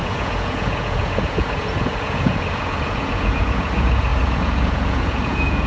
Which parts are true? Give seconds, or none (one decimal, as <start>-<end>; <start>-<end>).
none